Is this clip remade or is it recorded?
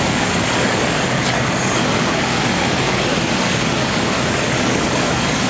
remade